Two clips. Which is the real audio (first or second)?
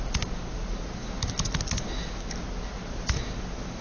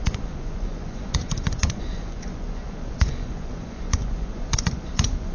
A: first